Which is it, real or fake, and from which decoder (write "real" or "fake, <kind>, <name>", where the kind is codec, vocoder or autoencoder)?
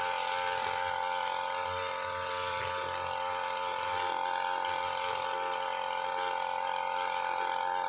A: real